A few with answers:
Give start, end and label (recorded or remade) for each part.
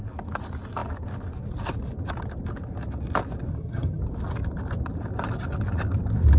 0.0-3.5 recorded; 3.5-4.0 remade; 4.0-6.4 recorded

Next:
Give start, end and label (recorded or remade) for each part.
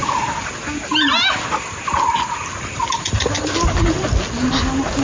0.0-5.0 recorded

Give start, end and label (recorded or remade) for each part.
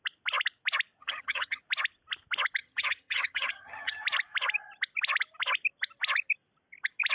0.0-1.0 recorded; 1.0-1.6 remade; 1.6-2.6 recorded; 2.6-4.0 remade; 4.0-7.1 recorded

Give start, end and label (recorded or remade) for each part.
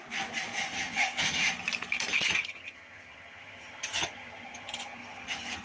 0.0-0.7 recorded; 0.7-1.5 remade; 1.5-2.1 recorded; 2.1-5.6 remade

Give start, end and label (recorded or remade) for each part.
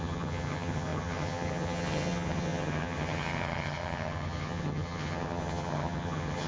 0.0-6.5 remade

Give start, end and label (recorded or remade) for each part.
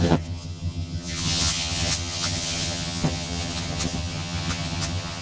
0.0-5.2 remade